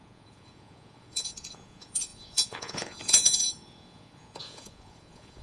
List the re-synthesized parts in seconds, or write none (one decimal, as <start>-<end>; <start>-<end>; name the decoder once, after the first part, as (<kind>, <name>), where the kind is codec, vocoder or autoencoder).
0.0-5.4 (vocoder, Vocos)